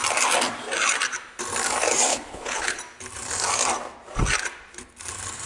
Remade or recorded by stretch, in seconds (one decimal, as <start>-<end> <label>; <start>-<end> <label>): 0.0-2.1 recorded; 2.1-2.8 remade; 2.8-5.5 recorded